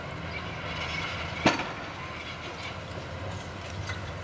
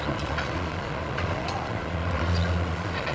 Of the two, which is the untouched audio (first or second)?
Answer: first